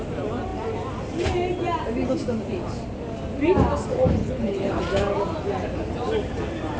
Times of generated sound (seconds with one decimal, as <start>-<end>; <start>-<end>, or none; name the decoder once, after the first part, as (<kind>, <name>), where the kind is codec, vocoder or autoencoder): 4.2-4.8 (codec, HILCodec)